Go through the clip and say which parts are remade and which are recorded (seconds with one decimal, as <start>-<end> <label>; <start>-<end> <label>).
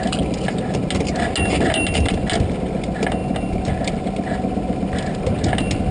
0.0-5.9 recorded